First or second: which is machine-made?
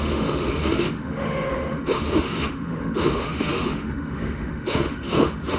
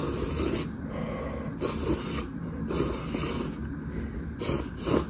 first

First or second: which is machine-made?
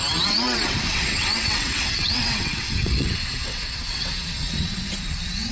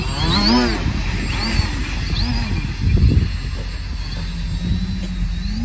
first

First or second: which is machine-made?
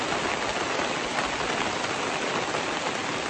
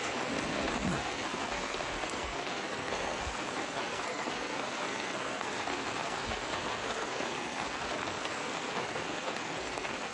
second